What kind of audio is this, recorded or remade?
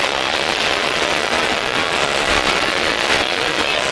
remade